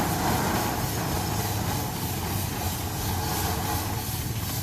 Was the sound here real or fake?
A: real